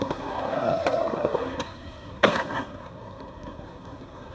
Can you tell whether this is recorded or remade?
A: remade